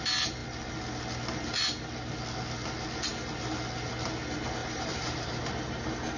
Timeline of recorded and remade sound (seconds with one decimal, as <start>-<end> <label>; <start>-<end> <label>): 0.0-4.6 recorded; 4.6-5.4 remade; 5.4-6.2 recorded